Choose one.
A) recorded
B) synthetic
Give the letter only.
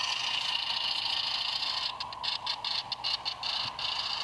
A